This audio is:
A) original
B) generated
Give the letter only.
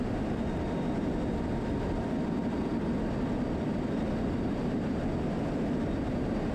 A